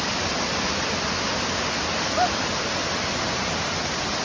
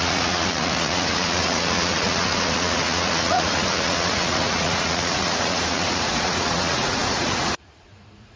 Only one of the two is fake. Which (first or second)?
second